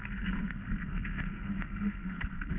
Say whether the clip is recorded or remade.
remade